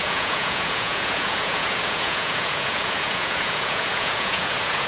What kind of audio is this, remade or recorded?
remade